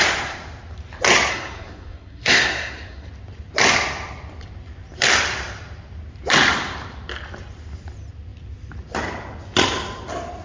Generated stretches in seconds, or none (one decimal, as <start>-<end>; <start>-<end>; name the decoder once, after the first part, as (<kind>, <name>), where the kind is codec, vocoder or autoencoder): 1.3-3.1 (codec, SNAC)